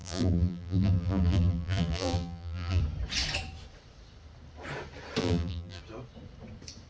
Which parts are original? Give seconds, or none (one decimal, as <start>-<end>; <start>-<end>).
2.8-5.2; 5.8-6.9